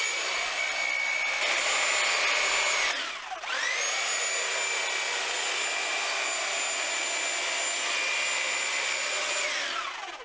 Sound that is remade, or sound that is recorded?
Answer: recorded